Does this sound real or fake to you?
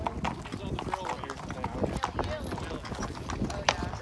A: real